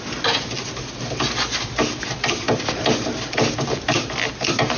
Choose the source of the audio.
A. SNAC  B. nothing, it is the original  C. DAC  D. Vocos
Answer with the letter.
B